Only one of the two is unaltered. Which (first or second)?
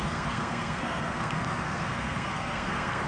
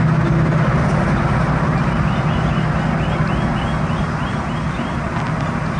second